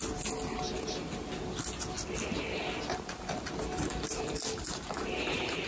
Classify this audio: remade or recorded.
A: recorded